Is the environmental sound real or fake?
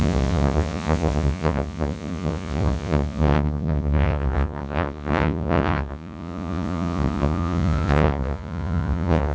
fake